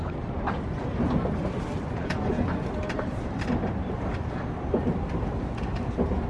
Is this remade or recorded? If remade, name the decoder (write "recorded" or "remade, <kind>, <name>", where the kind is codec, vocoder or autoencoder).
recorded